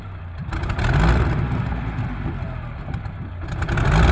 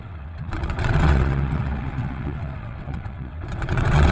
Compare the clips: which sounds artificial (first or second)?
second